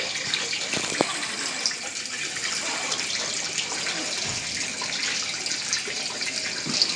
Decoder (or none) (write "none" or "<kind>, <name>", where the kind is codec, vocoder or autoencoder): none